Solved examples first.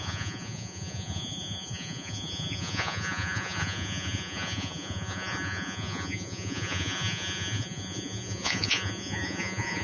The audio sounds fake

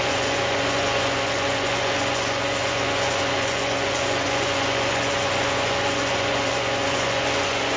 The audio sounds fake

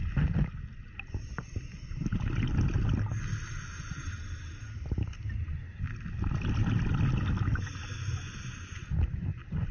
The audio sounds real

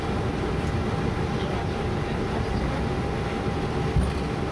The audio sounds real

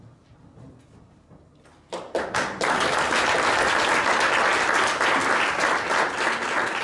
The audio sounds real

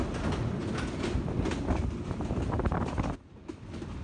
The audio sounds real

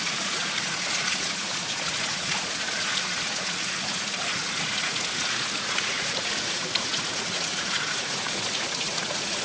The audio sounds fake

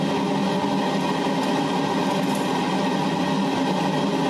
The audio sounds real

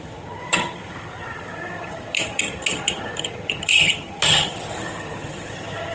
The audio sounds fake